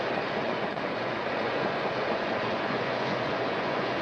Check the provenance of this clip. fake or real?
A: fake